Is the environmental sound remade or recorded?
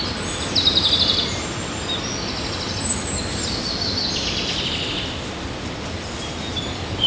recorded